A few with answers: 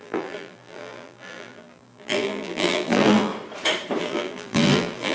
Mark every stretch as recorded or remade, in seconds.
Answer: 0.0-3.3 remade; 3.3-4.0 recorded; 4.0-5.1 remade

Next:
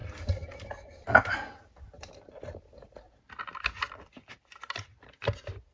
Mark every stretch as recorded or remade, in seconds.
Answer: 0.0-5.7 recorded